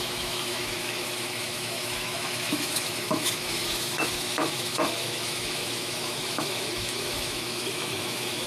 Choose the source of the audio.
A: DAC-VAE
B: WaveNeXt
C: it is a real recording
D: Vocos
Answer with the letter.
A